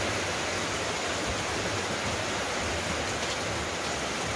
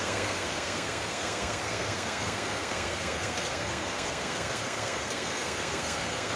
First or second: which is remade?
second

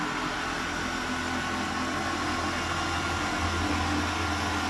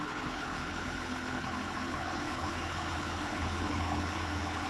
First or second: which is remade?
second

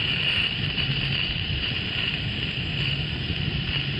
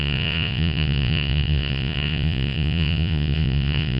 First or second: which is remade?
second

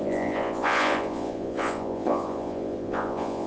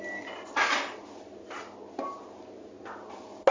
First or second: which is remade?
first